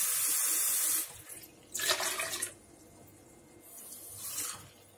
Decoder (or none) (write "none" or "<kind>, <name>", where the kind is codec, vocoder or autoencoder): none